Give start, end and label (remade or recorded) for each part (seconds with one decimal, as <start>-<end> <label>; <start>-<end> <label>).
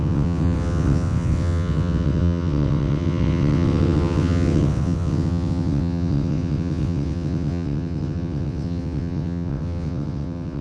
0.0-10.6 remade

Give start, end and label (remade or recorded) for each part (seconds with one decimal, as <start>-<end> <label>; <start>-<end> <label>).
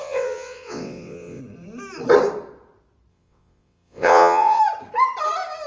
0.0-1.4 remade; 1.4-3.1 recorded; 3.1-4.6 remade; 4.6-5.7 recorded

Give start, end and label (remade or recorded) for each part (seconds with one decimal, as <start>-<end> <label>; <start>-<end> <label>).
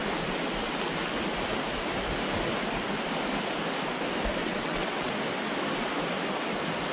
0.0-4.4 recorded; 4.4-5.1 remade; 5.1-6.9 recorded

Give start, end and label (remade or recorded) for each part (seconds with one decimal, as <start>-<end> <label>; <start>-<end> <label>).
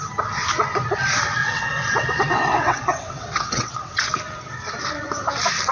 0.0-1.4 recorded; 1.4-4.1 remade; 4.1-5.7 recorded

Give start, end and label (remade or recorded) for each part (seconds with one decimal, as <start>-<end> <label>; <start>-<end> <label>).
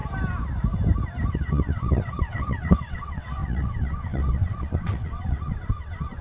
0.0-1.3 recorded; 1.3-6.2 remade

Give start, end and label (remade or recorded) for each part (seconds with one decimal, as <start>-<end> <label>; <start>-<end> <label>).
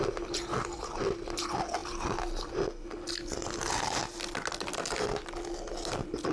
0.0-6.3 recorded